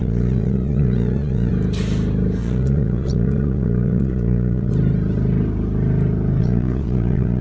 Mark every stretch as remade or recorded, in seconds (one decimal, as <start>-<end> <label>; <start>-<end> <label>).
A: 0.0-1.5 remade; 1.5-2.4 recorded; 2.4-4.7 remade; 4.7-6.4 recorded; 6.4-7.4 remade